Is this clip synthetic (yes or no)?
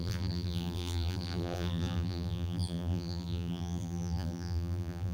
yes